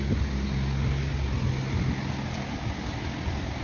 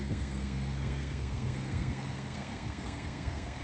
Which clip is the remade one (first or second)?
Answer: second